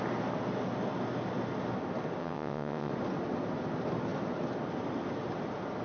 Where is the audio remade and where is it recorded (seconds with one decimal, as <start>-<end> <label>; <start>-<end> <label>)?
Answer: 0.0-2.2 recorded; 2.2-2.9 remade; 2.9-5.8 recorded